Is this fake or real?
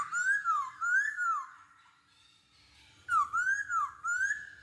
real